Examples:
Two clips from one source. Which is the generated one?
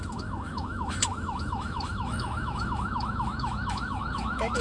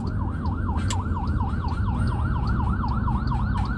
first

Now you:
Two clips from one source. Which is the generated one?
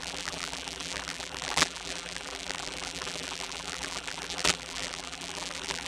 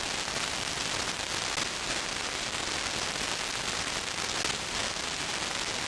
first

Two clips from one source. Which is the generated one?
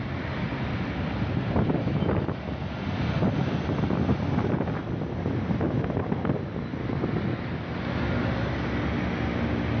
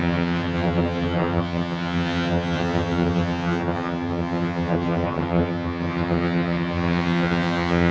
second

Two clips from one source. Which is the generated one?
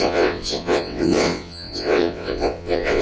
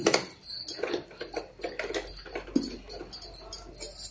first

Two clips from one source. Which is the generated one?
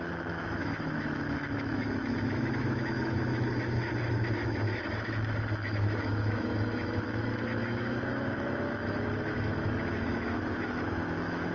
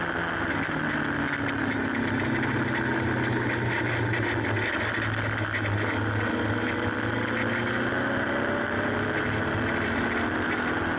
first